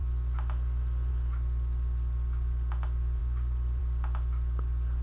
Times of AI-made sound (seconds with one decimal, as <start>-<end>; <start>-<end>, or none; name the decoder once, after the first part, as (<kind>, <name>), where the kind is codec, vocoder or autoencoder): none

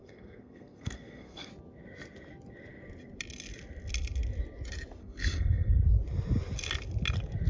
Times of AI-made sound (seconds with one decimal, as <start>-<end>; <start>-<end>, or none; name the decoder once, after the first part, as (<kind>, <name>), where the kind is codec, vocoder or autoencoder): 0.0-1.5 (codec, SNAC); 5.0-5.8

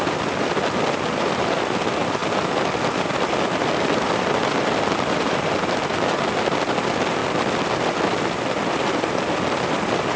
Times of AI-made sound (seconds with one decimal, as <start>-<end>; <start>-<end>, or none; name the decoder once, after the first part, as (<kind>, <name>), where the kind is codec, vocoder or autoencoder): none